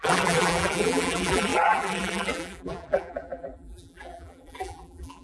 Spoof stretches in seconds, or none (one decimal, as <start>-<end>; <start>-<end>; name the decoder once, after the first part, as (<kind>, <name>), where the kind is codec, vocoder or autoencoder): 0.0-5.2 (vocoder, BigVGAN v2)